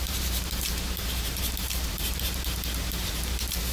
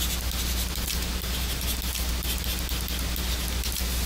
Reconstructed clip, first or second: first